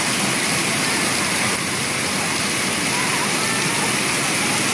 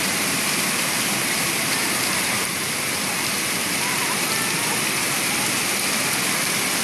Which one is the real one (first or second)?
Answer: first